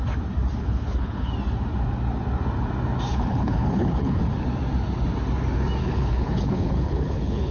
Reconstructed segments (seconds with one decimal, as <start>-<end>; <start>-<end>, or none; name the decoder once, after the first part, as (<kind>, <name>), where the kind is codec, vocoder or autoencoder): 0.6-1.3 (codec, HILCodec); 3.1-4.2; 5.8-7.5